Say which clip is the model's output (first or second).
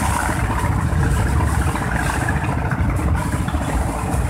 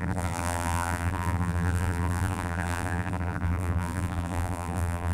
second